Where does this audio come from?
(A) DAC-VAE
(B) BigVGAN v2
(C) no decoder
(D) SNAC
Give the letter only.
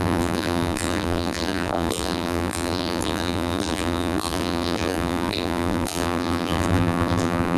B